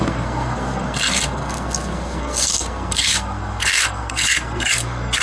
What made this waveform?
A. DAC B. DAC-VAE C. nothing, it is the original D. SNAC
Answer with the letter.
D